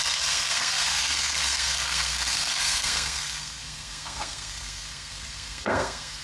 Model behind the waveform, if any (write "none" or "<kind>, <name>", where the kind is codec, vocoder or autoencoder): codec, SNAC